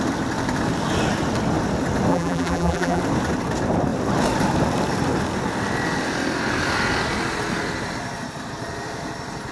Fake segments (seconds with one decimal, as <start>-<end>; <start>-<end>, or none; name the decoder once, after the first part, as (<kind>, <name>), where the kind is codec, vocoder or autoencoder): 2.1-3.0 (vocoder, BigVGAN v2)